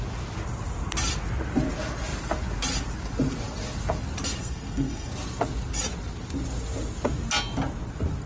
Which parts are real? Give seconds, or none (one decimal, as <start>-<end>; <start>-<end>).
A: 0.0-4.4; 5.1-8.3